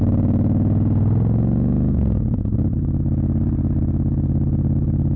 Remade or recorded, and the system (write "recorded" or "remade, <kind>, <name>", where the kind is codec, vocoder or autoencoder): recorded